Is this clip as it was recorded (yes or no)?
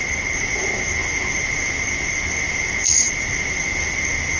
yes